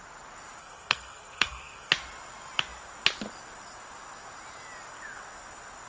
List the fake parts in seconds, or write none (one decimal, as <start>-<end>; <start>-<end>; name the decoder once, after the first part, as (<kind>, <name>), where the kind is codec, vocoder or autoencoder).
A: 0.6-1.9 (codec, SNAC)